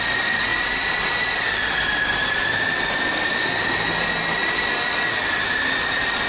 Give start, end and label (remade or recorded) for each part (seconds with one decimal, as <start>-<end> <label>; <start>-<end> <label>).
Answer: 0.0-0.5 recorded; 0.5-2.8 remade; 2.8-4.4 recorded; 4.4-6.3 remade